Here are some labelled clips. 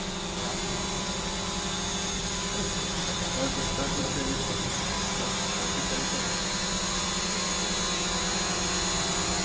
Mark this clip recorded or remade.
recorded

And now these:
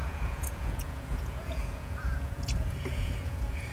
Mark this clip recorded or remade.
remade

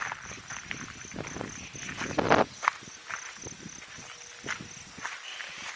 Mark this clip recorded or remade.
recorded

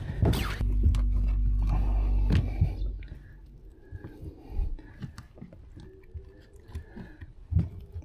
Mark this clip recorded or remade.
recorded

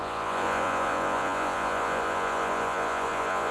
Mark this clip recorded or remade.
remade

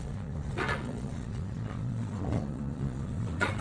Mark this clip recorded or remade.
remade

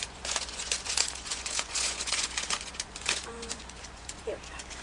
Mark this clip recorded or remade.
remade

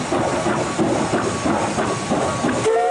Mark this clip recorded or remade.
recorded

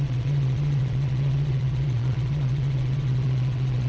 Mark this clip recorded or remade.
remade